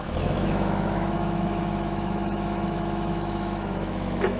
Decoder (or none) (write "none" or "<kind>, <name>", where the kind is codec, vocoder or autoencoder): autoencoder, DAC-VAE